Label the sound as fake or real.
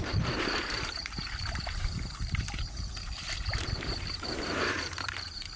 fake